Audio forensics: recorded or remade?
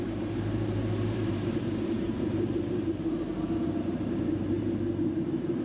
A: remade